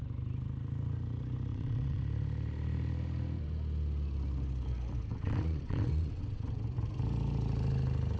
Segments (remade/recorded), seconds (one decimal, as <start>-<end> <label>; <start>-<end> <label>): 0.0-1.5 recorded; 1.5-2.0 remade; 2.0-5.1 recorded; 5.1-6.6 remade; 6.6-8.2 recorded